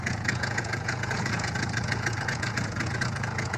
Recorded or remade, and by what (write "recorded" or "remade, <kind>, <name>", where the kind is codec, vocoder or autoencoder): remade, vocoder, Vocos